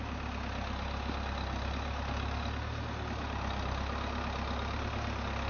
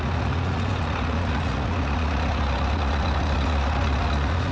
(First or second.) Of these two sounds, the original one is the first